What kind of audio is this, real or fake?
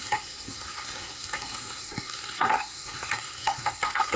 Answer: fake